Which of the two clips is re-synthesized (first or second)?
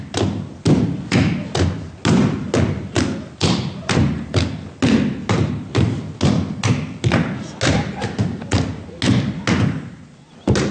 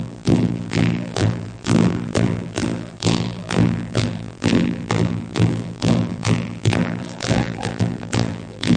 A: second